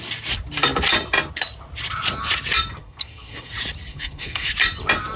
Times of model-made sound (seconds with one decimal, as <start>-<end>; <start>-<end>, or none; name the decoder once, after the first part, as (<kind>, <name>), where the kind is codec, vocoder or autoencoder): 2.8-3.5 (codec, SNAC); 3.9-4.5